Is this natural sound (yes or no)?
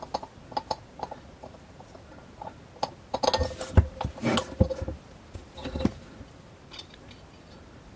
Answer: yes